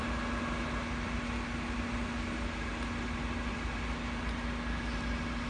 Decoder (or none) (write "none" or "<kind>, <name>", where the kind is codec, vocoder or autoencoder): none